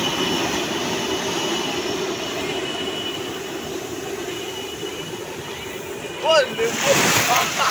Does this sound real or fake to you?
real